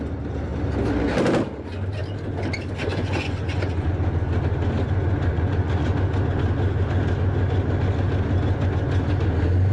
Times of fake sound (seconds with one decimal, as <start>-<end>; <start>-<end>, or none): 2.9-4.0; 5.3-6.0